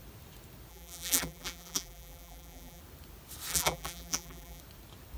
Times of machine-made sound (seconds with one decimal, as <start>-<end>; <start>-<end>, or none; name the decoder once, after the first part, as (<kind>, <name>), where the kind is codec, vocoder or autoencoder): 0.7-2.8 (vocoder, BigVGAN v2); 3.5-4.6

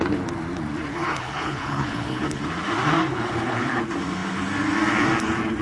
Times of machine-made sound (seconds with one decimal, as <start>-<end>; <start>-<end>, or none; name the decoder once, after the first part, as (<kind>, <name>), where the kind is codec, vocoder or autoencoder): 0.9-2.4 (codec, HILCodec); 3.1-3.8

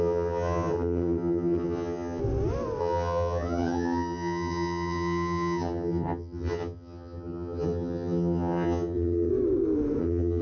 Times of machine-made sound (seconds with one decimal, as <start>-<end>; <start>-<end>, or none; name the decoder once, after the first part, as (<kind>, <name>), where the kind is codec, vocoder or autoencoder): 0.0-2.2 (vocoder, HiFi-GAN); 2.8-9.3; 10.0-10.4

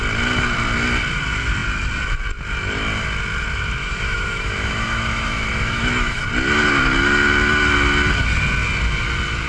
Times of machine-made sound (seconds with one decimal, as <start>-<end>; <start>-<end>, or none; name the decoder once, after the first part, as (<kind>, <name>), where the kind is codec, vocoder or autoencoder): 3.8-6.2 (autoencoder, DAC-VAE)

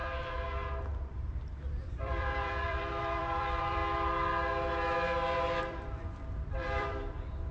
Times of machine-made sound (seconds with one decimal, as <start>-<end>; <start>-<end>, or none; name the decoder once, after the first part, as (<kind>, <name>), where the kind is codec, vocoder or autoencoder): 1.1-3.8 (vocoder, BigVGAN v2); 5.6-7.5

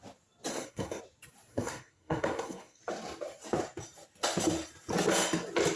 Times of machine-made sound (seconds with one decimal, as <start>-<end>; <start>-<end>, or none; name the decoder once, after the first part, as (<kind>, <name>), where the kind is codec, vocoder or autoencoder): 0.5-1.0 (codec, SNAC); 1.5-2.8

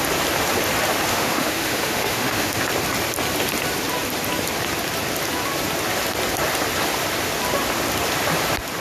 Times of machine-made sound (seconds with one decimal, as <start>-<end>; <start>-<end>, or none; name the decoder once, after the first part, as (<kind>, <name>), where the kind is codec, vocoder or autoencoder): 1.1-2.6 (autoencoder, DAC-VAE)